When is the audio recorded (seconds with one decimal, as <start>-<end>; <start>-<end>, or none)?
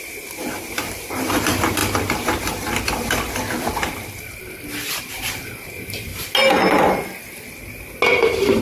1.8-5.0; 6.1-8.1